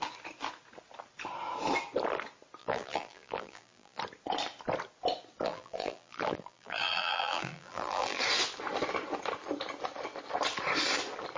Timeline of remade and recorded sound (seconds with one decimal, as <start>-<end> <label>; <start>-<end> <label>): 0.0-2.6 recorded; 2.6-4.0 remade; 4.0-5.4 recorded; 5.4-8.2 remade; 8.2-11.4 recorded